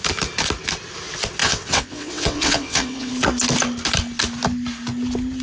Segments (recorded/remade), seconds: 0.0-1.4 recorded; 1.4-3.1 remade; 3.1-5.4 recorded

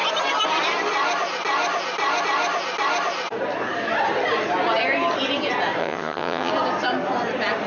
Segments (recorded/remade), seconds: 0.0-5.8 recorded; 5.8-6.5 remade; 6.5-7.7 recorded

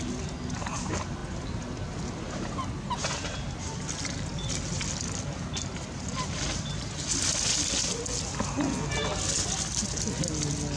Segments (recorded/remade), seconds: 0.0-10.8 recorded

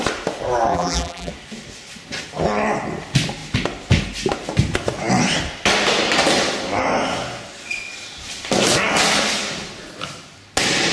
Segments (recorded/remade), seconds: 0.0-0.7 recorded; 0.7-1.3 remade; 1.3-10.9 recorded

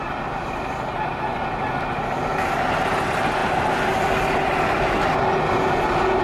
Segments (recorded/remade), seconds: 0.0-6.2 recorded

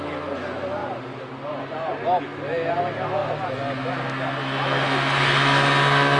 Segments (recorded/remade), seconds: 0.0-0.8 recorded; 0.8-2.2 remade; 2.2-6.2 recorded

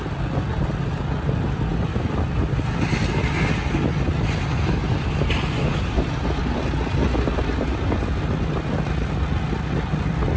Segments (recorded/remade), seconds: 0.0-10.4 recorded

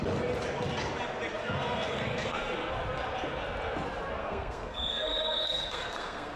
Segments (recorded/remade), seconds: 0.0-1.4 recorded; 1.4-2.4 remade; 2.4-4.2 recorded; 4.2-6.4 remade